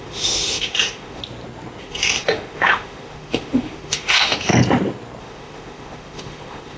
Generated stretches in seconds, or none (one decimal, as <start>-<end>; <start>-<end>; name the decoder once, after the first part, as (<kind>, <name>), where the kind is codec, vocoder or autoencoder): 0.0-1.2 (autoencoder, DAC-VAE); 1.8-4.5; 5.2-6.8

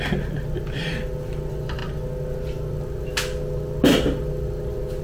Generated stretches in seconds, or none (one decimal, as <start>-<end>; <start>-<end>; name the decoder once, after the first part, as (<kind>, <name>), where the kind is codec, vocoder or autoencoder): none